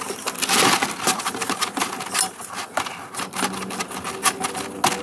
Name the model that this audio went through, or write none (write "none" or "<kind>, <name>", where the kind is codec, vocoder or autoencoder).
none